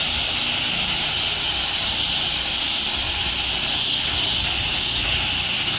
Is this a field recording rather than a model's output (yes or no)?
yes